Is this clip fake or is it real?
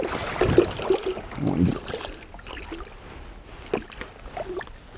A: real